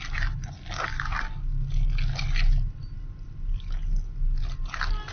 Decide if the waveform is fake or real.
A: real